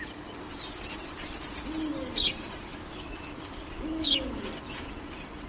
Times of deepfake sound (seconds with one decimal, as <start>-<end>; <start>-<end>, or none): 2.7-3.4; 3.9-4.5